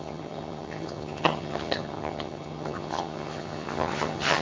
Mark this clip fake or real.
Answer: fake